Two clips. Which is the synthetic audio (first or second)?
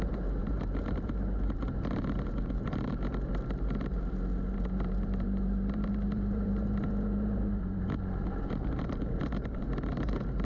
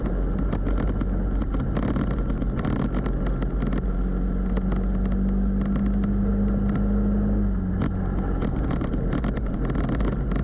first